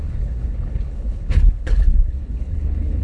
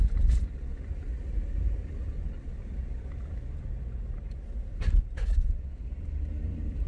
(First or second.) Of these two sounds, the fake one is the first